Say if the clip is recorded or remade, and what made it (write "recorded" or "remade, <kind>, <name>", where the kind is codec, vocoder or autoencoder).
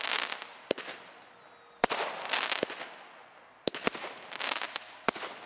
recorded